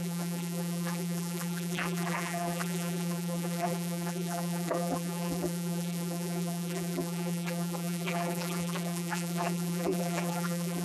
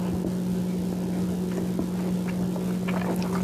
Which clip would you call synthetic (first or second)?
first